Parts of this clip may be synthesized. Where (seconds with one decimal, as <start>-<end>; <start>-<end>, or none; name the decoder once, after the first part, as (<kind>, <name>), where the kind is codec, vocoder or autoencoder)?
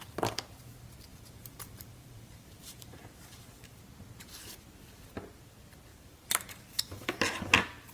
1.1-3.8 (vocoder, BigVGAN v2); 5.9-7.2